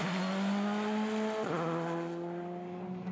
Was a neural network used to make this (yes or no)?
no